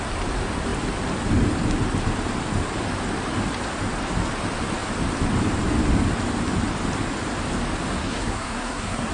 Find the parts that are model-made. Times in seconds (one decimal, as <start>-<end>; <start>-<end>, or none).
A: 8.0-9.1